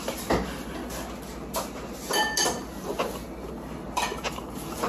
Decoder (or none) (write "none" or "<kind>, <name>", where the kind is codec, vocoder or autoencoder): none